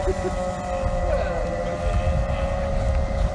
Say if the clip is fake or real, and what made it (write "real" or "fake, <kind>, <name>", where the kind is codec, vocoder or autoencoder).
real